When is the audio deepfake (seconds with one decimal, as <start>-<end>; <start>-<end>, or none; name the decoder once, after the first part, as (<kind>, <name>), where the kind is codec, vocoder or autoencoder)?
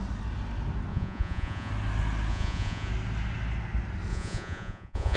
0.9-1.7 (vocoder, Vocos); 2.3-2.9; 4.1-5.2